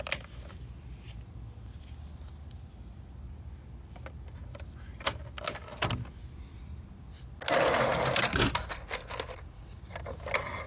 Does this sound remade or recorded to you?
recorded